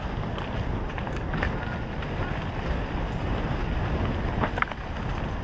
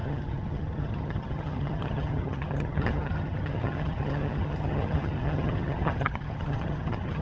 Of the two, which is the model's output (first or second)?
second